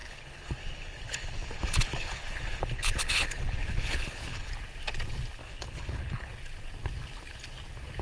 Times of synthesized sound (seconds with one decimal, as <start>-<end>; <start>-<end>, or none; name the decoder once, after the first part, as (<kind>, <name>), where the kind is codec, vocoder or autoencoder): 0.0-4.5 (codec, HILCodec); 5.4-6.3